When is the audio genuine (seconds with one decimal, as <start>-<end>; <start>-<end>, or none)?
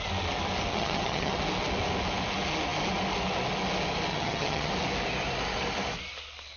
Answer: 0.0-0.7; 1.4-4.1; 4.7-6.6